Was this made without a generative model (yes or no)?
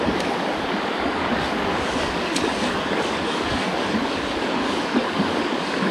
no